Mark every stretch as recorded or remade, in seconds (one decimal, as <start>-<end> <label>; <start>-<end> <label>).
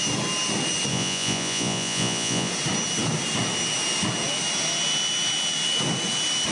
0.0-0.9 recorded; 0.9-2.5 remade; 2.5-6.5 recorded